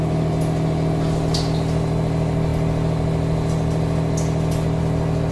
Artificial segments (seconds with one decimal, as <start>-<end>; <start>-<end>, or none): none